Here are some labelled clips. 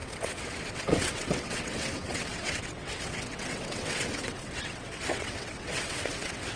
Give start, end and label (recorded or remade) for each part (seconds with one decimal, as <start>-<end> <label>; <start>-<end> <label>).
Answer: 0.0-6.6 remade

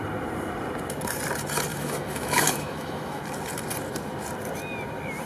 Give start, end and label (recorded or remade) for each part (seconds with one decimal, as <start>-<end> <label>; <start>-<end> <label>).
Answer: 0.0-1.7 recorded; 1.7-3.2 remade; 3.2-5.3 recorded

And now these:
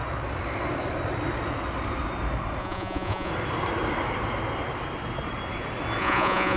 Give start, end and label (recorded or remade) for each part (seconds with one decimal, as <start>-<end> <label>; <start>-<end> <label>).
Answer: 0.0-2.6 recorded; 2.6-3.3 remade; 3.3-6.0 recorded; 6.0-6.6 remade